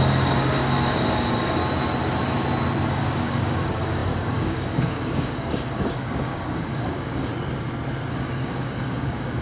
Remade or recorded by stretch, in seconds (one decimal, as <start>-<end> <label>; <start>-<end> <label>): 0.0-1.6 remade; 1.6-2.9 recorded; 2.9-7.3 remade; 7.3-8.1 recorded; 8.1-9.4 remade

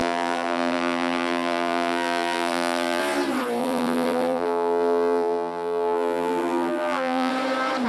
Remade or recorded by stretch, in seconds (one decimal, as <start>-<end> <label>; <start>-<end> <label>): 0.0-3.0 remade; 3.0-3.6 recorded; 3.6-7.3 remade; 7.3-7.9 recorded

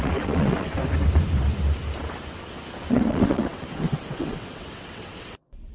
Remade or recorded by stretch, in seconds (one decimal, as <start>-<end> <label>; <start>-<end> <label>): 0.0-0.8 remade; 0.8-2.9 recorded; 2.9-5.7 remade

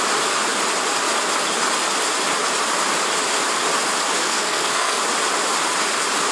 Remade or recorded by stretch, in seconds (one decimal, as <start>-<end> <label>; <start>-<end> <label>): 0.0-4.2 recorded; 4.2-5.0 remade; 5.0-6.3 recorded

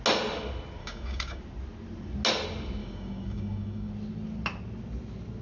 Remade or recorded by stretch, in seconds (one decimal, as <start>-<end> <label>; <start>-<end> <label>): 0.0-0.8 recorded; 0.8-1.4 remade; 1.4-2.8 recorded; 2.8-3.9 remade; 3.9-5.4 recorded

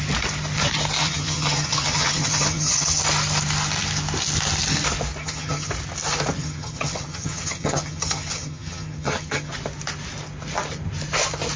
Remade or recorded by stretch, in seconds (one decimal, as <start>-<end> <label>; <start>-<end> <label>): 0.0-1.0 recorded; 1.0-3.0 remade; 3.0-5.2 recorded; 5.2-5.7 remade; 5.7-6.4 recorded; 6.4-9.5 remade; 9.5-11.6 recorded